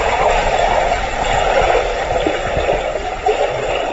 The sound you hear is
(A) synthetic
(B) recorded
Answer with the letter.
B